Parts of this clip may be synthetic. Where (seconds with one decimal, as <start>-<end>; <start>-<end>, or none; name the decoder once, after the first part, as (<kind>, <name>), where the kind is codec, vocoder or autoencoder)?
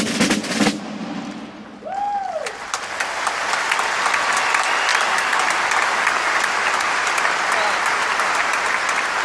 none